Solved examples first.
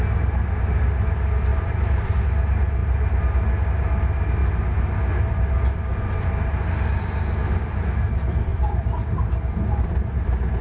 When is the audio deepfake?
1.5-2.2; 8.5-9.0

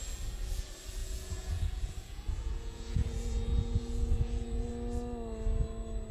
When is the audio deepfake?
1.0-4.7

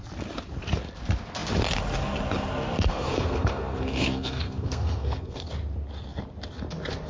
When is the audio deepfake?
2.9-5.5

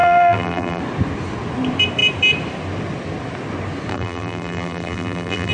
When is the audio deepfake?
0.0-0.8; 3.9-5.5

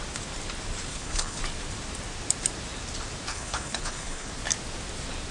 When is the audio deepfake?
0.9-1.4; 3.3-4.3